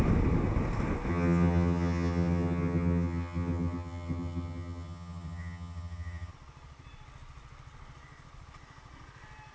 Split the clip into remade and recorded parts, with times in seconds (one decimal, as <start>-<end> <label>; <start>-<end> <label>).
0.0-1.1 recorded; 1.1-6.3 remade; 6.3-9.5 recorded